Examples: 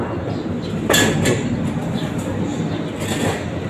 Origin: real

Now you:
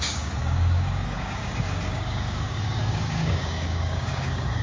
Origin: fake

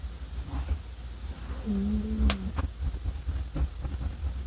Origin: real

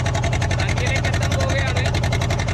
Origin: real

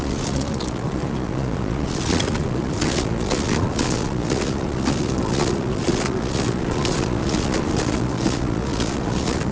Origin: fake